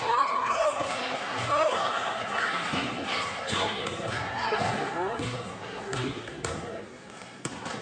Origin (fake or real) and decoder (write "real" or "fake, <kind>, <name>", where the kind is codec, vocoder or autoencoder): fake, codec, SNAC